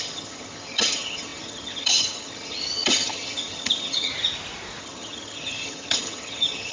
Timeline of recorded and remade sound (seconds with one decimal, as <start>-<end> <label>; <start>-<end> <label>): 0.0-4.1 remade; 4.1-4.8 recorded; 4.8-6.7 remade